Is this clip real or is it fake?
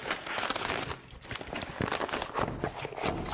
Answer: real